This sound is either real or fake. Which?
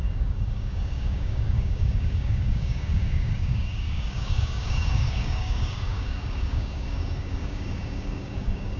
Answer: fake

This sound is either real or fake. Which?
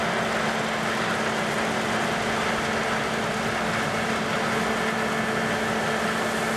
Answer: real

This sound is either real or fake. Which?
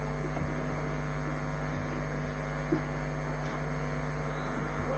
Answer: real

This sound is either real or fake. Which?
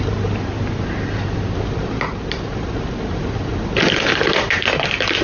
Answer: real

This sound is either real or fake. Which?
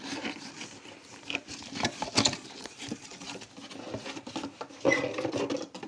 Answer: real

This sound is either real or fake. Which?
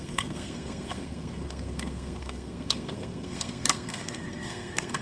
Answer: fake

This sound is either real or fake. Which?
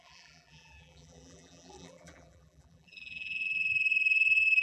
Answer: fake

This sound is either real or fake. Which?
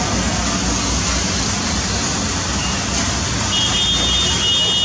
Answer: real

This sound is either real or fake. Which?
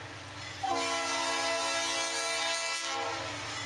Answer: real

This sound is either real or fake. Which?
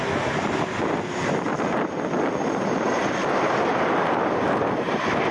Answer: real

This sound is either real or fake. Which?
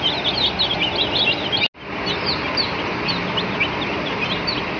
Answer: real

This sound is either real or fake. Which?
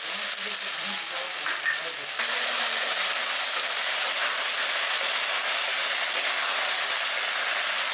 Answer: real